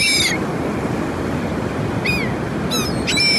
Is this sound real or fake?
real